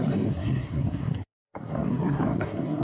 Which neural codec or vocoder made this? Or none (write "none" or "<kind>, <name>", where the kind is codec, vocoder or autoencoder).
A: codec, SNAC